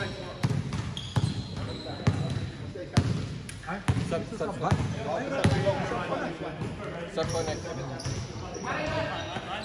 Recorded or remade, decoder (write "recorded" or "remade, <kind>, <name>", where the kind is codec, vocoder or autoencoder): recorded